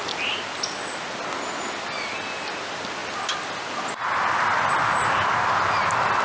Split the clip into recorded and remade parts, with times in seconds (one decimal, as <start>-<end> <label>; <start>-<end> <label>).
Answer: 0.0-6.2 recorded